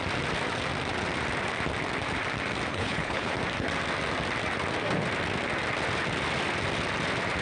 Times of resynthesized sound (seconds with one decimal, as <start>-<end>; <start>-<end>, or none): 2.7-3.3